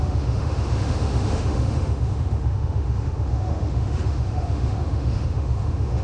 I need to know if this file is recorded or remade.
remade